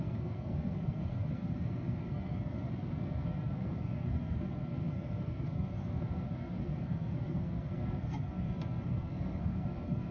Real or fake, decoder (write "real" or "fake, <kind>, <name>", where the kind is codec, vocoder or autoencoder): fake, codec, SNAC